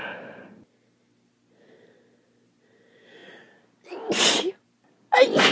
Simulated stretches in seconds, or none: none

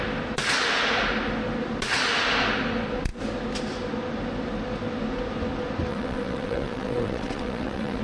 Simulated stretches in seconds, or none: 5.9-8.0

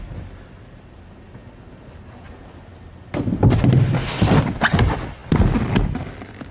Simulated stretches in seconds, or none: none

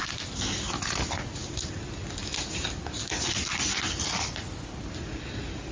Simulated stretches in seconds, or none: none

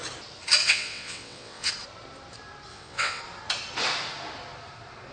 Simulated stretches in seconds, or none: 0.6-1.7; 2.7-3.2